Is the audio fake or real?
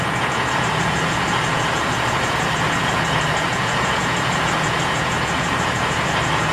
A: fake